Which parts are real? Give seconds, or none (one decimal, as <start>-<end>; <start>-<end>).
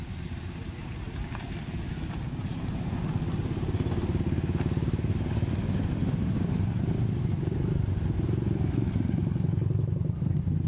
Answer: 0.0-10.7